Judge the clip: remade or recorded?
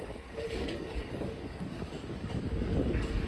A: remade